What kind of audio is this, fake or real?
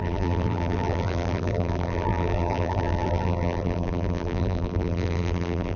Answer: fake